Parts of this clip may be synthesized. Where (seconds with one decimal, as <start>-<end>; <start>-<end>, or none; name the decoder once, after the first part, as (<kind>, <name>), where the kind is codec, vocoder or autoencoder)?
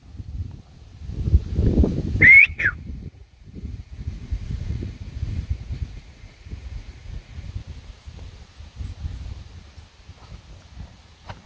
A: 2.4-7.5 (vocoder, Vocos)